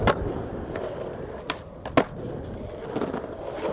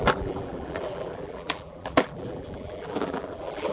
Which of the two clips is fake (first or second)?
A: second